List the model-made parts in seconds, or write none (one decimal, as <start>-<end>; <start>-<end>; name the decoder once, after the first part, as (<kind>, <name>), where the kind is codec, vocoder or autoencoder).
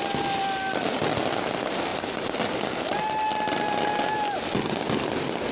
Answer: none